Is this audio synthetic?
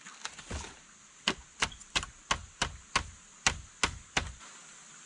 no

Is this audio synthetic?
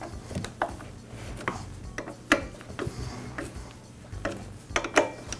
no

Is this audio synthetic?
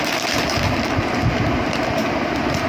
no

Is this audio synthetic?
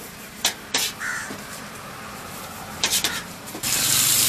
yes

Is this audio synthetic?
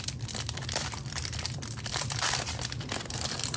yes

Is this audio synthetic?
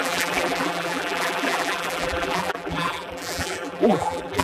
yes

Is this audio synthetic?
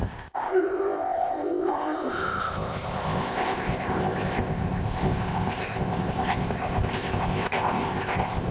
yes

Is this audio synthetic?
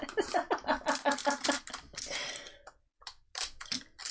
no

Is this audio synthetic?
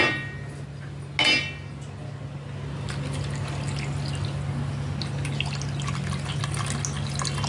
no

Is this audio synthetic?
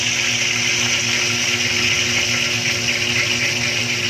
no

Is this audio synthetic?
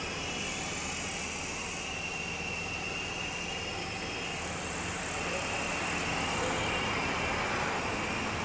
no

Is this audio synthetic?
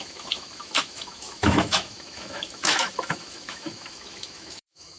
yes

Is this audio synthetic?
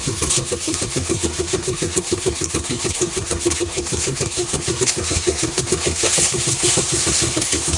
yes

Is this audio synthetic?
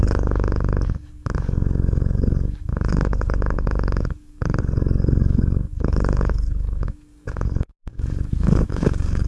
yes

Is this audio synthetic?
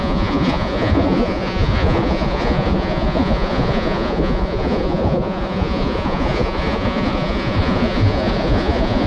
yes